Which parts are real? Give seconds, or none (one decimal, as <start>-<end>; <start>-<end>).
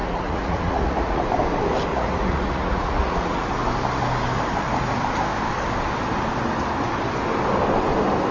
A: 1.2-1.9; 3.5-8.3